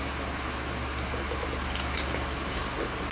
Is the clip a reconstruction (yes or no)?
no